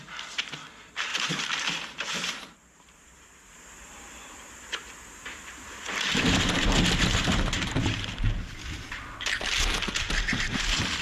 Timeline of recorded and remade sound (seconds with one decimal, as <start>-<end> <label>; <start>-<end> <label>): 0.0-1.1 recorded; 1.1-4.3 remade; 4.3-11.0 recorded